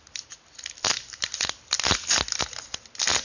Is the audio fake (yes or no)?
no